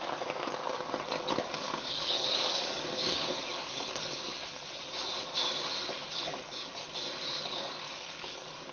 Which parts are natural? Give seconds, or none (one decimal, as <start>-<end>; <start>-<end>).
4.3-6.1; 6.7-7.4